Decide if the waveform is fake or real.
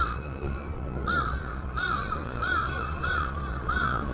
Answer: fake